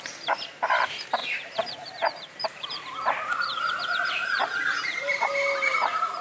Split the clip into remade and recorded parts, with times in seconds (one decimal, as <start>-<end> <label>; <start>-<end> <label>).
0.0-1.2 recorded; 1.2-3.7 remade; 3.7-4.8 recorded; 4.8-5.3 remade; 5.3-6.2 recorded